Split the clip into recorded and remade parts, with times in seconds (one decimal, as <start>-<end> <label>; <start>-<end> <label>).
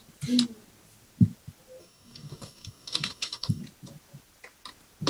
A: 0.0-1.8 recorded; 1.8-3.6 remade; 3.6-5.1 recorded